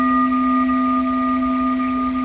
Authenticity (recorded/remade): recorded